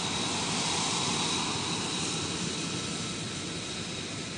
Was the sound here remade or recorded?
recorded